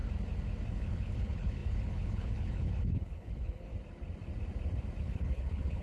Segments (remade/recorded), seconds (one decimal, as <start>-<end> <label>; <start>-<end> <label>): 0.0-0.7 recorded; 0.7-3.7 remade; 3.7-5.0 recorded; 5.0-5.8 remade